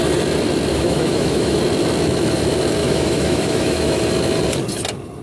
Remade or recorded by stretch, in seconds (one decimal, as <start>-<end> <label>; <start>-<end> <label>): 0.0-0.7 recorded; 0.7-1.6 remade; 1.6-2.8 recorded; 2.8-4.0 remade; 4.0-5.2 recorded